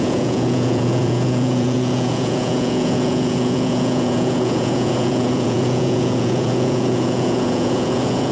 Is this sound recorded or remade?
remade